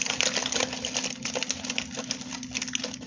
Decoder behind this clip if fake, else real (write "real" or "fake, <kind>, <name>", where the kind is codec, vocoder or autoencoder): real